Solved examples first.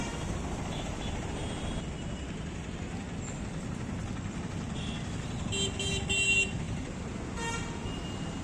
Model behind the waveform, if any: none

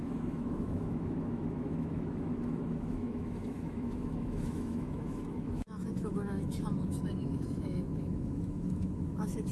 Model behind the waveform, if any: autoencoder, DAC-VAE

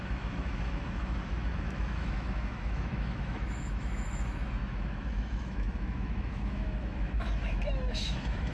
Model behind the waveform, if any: autoencoder, DAC-VAE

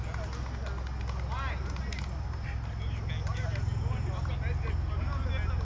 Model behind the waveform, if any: none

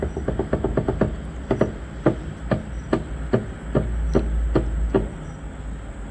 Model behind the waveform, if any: none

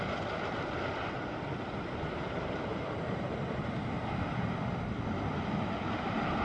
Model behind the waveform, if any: none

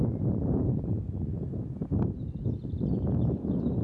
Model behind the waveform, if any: none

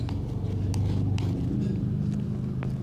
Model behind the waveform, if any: none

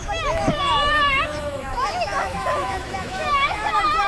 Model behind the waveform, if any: autoencoder, DAC-VAE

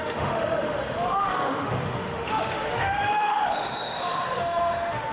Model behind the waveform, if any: autoencoder, DAC-VAE